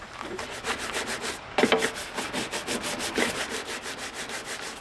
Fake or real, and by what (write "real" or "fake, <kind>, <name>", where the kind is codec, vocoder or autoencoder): real